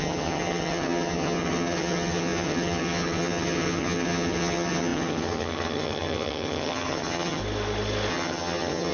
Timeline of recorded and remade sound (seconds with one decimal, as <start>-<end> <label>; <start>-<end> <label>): 0.0-7.4 remade; 7.4-8.1 recorded; 8.1-8.9 remade